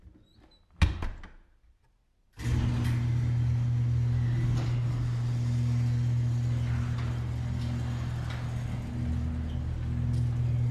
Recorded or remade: recorded